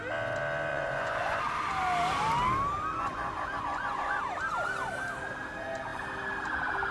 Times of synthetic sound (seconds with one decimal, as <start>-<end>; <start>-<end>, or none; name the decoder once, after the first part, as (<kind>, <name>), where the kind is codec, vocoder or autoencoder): 0.7-1.4 (vocoder, Vocos); 2.9-4.2